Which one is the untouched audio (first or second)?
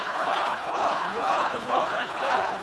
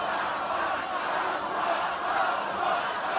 second